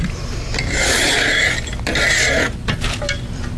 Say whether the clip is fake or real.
fake